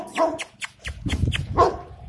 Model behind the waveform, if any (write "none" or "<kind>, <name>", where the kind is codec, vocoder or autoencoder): none